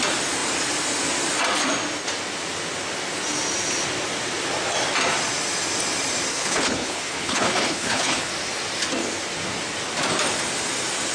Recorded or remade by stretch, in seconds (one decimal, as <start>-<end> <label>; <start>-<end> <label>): 0.0-6.3 recorded; 6.3-8.3 remade; 8.3-11.1 recorded